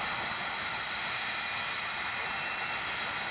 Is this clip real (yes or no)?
yes